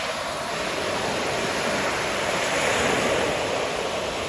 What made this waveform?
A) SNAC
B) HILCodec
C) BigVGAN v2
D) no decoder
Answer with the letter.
C